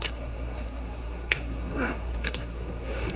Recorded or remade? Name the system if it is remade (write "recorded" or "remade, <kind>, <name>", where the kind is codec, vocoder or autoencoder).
remade, codec, SNAC